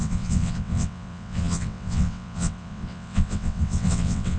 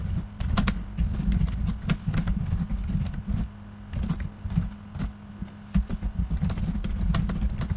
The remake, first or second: first